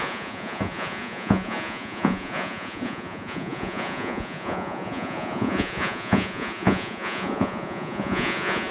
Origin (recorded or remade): remade